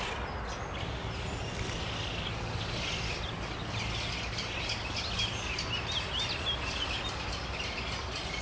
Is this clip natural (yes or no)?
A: yes